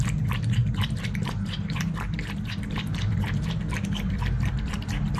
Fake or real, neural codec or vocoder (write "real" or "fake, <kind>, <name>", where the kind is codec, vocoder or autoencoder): real